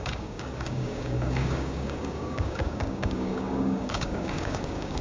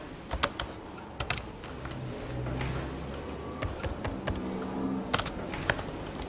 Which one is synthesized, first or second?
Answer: first